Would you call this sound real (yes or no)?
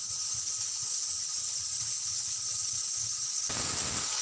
yes